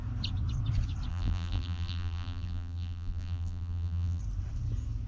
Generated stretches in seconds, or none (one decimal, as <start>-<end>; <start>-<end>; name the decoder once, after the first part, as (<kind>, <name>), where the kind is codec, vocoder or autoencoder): 1.1-4.2 (vocoder, BigVGAN v2)